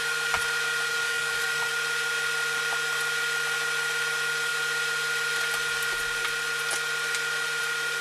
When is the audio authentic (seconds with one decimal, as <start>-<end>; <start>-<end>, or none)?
0.0-0.9; 1.7-8.0